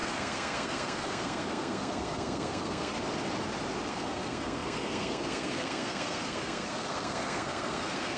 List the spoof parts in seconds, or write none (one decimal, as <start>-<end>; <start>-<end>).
0.0-2.9; 3.9-8.2

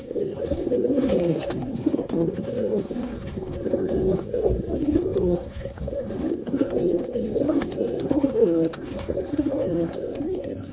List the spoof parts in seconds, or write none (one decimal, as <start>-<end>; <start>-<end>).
0.0-10.7